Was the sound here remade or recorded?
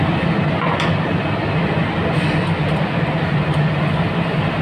recorded